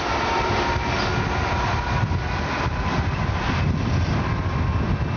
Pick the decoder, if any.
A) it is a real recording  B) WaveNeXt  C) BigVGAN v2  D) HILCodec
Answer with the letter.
A